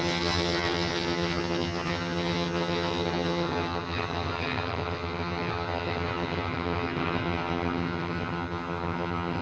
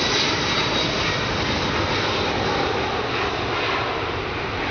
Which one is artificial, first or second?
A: first